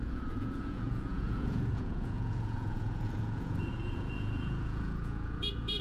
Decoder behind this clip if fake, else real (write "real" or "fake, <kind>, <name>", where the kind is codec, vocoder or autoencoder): fake, vocoder, Vocos